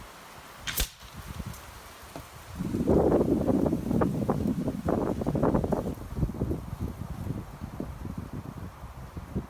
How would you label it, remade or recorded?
recorded